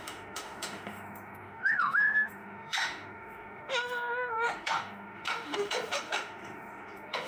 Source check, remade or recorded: remade